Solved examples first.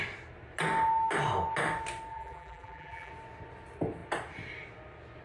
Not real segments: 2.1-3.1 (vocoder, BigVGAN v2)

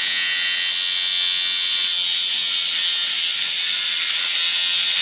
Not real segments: none

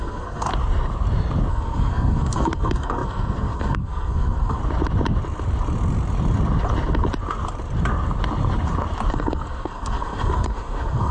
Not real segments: 0.0-0.5 (codec, SNAC); 1.5-4.6; 9.1-11.1

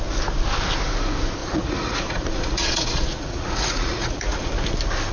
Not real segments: 1.4-4.5 (vocoder, Vocos)

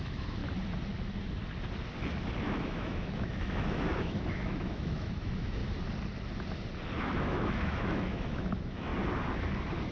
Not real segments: 0.0-0.4 (autoencoder, DAC-VAE); 2.4-5.6; 7.0-8.9

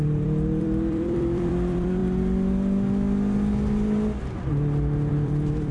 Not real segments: 0.0-2.0 (vocoder, BigVGAN v2); 5.1-5.7

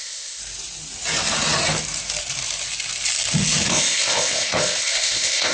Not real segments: 0.0-0.4 (codec, ZipCodec); 3.7-5.5